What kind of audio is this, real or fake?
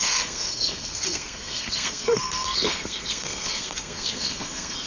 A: fake